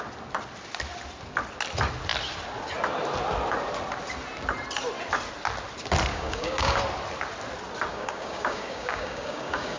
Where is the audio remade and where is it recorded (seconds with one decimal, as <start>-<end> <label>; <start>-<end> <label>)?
0.0-6.1 recorded; 6.1-6.8 remade; 6.8-7.9 recorded; 7.9-9.8 remade